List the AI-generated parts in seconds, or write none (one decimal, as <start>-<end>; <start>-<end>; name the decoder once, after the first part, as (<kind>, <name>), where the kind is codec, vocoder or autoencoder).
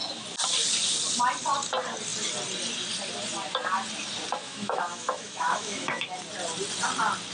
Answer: 4.4-6.1 (autoencoder, DAC-VAE)